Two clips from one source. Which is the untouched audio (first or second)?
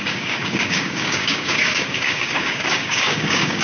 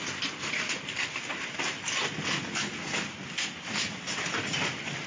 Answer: second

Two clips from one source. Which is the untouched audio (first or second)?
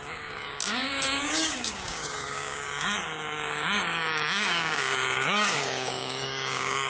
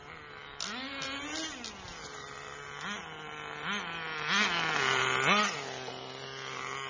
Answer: second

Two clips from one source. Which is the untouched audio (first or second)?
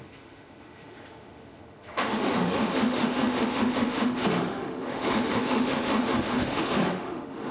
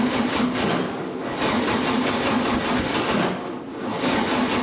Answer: second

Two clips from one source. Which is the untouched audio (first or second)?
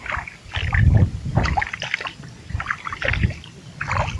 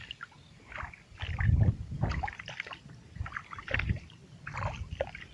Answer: first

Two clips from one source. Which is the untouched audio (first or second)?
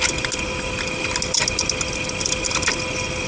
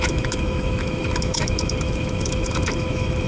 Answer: first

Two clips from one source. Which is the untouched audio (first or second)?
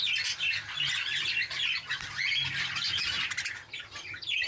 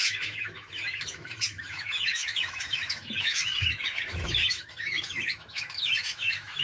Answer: first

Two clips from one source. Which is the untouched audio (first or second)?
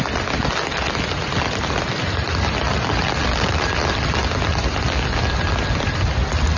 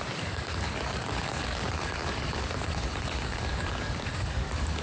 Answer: first